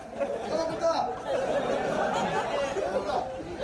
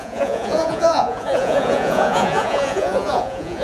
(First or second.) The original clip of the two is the first